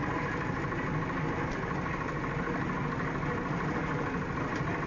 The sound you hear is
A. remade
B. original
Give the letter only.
B